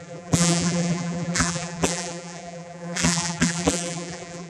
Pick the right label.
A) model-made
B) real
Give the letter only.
A